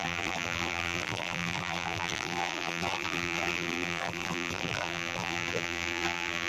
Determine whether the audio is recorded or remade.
remade